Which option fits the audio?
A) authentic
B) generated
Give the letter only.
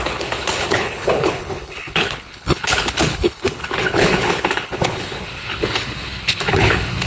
B